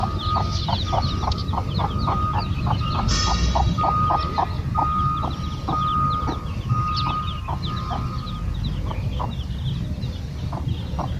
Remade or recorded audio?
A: recorded